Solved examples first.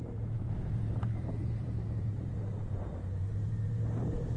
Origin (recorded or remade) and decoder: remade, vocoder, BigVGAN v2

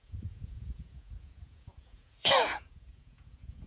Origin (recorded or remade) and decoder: remade, vocoder, Vocos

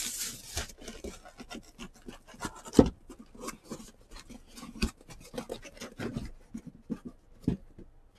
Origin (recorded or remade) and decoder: recorded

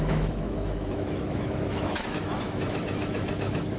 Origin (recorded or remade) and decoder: remade, autoencoder, DAC-VAE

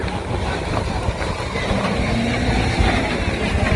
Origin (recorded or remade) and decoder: recorded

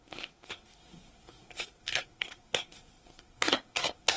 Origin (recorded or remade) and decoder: remade, codec, SNAC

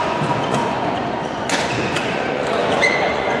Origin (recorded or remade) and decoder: remade, vocoder, Vocos